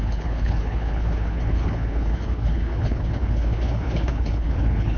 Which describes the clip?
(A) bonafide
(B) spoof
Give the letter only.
B